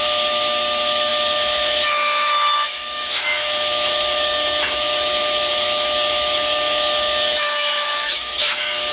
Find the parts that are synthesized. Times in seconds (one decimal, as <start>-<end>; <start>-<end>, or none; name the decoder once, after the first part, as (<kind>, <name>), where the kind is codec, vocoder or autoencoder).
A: 0.0-8.9 (autoencoder, DAC-VAE)